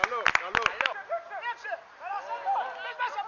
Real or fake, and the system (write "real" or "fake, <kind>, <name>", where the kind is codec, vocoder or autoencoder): real